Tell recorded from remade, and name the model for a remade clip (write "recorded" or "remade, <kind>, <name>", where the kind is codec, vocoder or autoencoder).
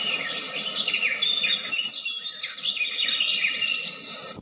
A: recorded